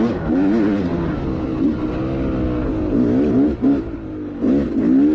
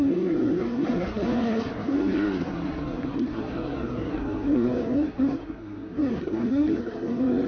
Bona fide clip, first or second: first